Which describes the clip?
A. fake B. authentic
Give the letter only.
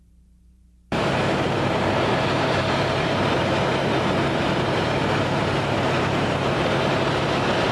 A